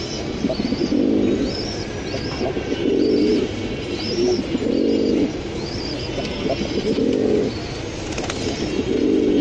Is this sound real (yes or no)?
yes